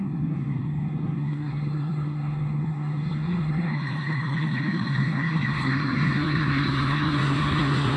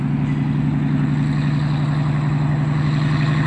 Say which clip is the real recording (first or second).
second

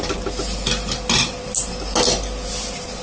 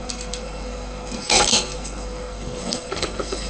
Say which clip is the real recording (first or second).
first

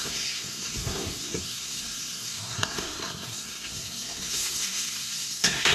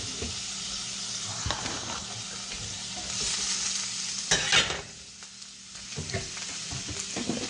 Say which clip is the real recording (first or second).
second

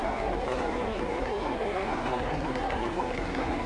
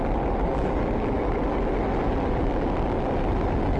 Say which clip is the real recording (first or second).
second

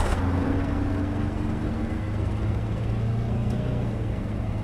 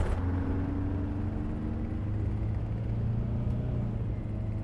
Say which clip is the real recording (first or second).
second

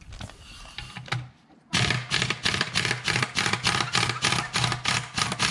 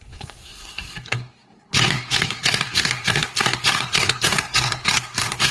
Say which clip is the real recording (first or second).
first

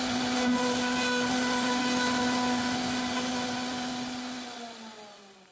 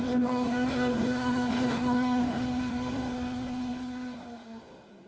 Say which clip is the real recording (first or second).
first